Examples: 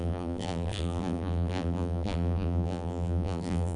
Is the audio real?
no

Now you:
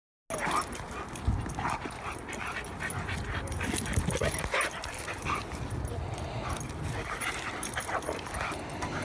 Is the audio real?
yes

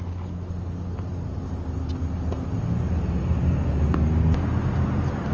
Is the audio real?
yes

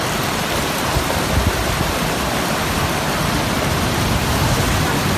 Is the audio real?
yes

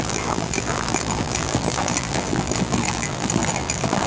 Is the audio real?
no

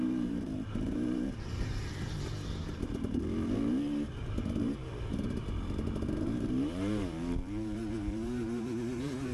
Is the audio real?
no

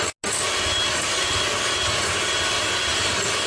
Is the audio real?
yes